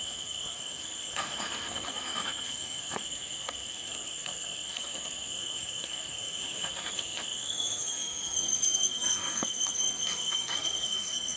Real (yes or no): no